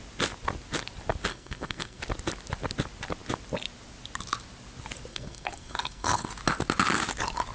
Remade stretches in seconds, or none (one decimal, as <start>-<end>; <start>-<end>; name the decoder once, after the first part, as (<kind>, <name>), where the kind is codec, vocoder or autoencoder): 1.3-2.0 (codec, SNAC); 5.1-6.3

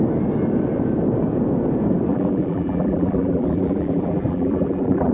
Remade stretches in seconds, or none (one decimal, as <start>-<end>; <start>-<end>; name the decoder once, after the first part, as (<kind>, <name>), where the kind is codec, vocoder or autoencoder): 2.1-5.1 (vocoder, BigVGAN v2)

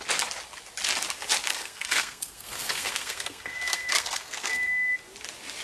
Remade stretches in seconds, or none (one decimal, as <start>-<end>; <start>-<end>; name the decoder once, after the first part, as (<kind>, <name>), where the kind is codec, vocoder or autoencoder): 1.5-4.9 (codec, SNAC)